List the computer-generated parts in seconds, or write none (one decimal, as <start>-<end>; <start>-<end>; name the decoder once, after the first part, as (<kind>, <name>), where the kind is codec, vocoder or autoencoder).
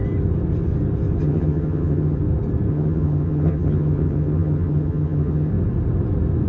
1.2-2.2 (vocoder, HiFi-GAN); 2.7-5.5